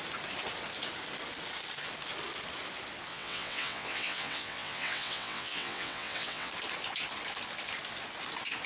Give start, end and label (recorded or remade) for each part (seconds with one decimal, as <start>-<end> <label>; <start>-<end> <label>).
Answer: 0.0-3.1 recorded; 3.1-6.5 remade; 6.5-8.7 recorded